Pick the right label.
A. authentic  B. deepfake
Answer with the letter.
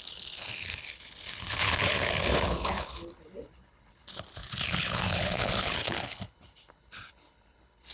B